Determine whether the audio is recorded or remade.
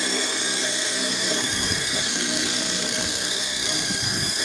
remade